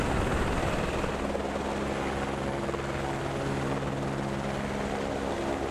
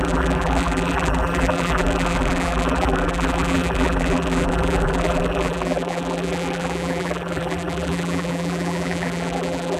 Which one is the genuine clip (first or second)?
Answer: first